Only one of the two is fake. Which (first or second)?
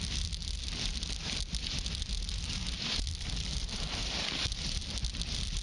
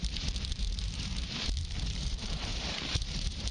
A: second